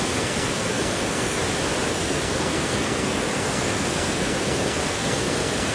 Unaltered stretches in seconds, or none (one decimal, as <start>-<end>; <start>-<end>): 1.4-1.9